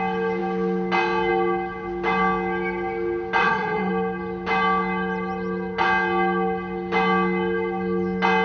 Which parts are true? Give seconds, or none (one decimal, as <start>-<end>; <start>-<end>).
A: 0.0-3.4; 3.9-8.4